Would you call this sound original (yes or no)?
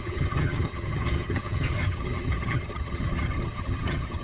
no